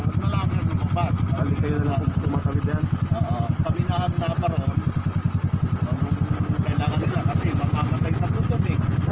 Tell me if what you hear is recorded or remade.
recorded